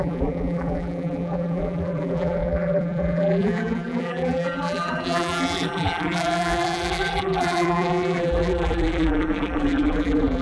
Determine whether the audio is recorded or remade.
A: remade